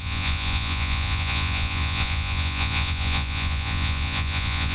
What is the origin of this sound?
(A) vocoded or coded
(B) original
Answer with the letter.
A